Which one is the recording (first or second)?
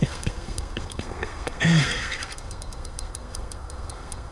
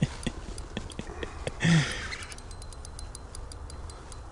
second